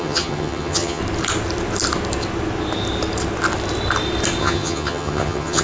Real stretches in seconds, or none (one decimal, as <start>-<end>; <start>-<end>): 1.0-4.4